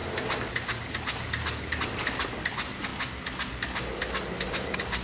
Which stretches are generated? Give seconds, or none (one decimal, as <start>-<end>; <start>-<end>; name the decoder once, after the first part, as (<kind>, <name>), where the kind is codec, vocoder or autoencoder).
none